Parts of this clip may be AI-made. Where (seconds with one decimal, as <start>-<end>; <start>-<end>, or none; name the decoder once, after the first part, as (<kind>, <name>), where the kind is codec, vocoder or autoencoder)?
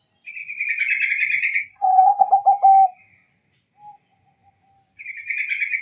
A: 1.7-2.3 (codec, SNAC)